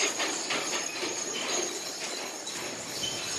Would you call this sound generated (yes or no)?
no